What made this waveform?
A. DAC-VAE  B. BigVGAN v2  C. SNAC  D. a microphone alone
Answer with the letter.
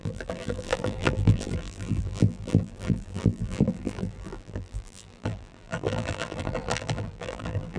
B